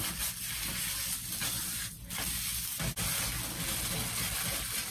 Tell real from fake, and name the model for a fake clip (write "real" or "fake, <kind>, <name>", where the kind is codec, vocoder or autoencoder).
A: real